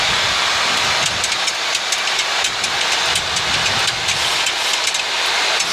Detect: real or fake real